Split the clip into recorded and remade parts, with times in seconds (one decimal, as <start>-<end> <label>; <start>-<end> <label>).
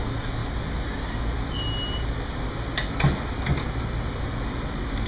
0.0-5.1 recorded